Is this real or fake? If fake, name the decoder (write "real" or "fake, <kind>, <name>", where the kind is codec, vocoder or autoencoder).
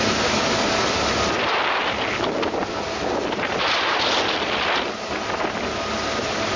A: real